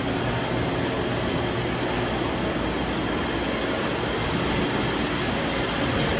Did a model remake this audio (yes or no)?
no